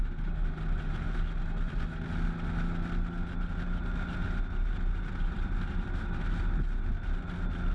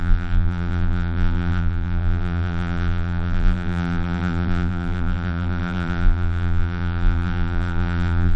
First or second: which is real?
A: first